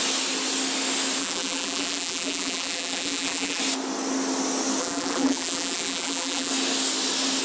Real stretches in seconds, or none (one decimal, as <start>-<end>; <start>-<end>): 0.0-1.2; 3.6-4.8; 6.5-7.4